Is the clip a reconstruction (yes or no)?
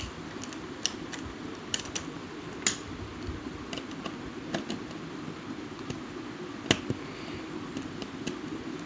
no